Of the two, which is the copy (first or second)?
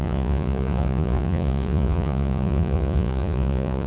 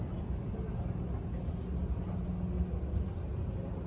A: first